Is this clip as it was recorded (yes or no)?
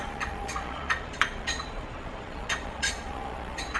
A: no